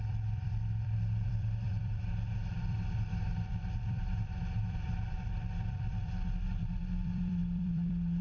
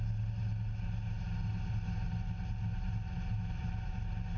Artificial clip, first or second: first